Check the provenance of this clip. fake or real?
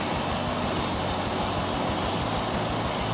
real